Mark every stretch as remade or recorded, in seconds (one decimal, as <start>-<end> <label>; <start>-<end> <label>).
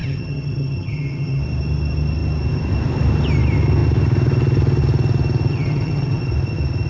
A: 0.0-1.4 remade; 1.4-5.5 recorded; 5.5-6.2 remade; 6.2-6.9 recorded